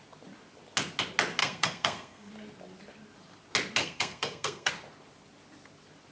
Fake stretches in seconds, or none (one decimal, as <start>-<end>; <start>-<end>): 1.4-2.3; 3.8-4.7